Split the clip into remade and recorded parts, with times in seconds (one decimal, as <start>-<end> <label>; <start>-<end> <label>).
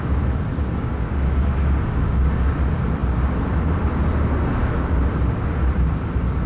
0.0-0.5 recorded; 0.5-2.5 remade; 2.5-6.5 recorded